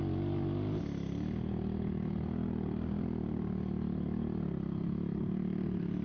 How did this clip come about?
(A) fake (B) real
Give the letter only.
B